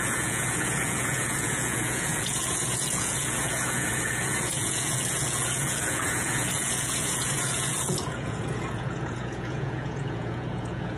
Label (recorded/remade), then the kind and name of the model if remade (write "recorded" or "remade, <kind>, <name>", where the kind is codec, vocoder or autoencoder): remade, vocoder, Vocos